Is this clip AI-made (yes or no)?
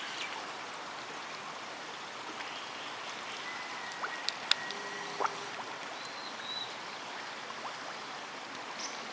no